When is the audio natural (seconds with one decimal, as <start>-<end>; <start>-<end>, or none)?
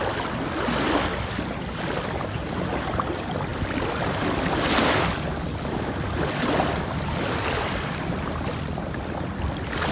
0.0-9.9